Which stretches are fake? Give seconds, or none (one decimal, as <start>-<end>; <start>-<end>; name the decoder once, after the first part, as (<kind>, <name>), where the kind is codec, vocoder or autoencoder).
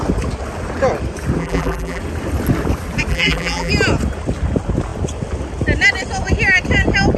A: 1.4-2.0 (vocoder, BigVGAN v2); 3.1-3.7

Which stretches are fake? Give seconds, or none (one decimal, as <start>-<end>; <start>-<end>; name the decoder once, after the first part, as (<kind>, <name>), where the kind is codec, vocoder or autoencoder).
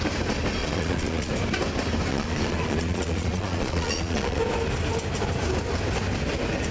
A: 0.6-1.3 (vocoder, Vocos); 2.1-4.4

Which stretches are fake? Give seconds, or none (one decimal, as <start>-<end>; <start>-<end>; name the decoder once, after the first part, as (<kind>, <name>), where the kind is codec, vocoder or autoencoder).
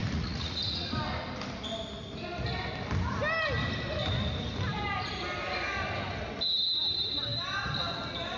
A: 0.0-0.9 (vocoder, Vocos)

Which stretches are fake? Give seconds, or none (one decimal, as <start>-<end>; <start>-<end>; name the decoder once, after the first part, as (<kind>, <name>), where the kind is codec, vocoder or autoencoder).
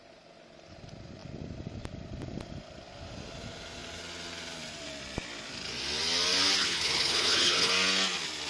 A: 6.6-7.7 (codec, HILCodec)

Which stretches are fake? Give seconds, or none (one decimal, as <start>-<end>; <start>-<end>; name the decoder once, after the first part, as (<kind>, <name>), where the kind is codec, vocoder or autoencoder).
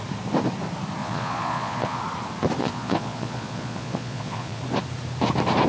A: 1.0-2.0 (vocoder, Vocos); 2.6-4.6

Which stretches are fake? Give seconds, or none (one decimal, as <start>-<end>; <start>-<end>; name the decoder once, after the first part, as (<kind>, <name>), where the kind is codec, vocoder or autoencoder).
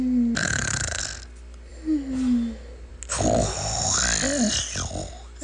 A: 0.4-1.0 (codec, HILCodec)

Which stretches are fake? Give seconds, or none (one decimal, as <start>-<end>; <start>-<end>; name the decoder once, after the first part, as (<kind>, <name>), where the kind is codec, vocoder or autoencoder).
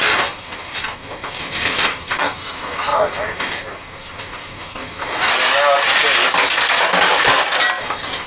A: 0.0-5.3 (codec, DAC); 7.8-8.3